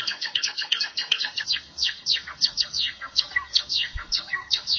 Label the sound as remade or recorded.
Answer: remade